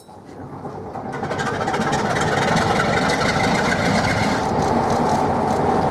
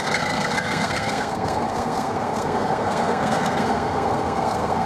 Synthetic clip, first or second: second